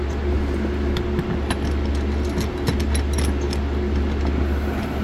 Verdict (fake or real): real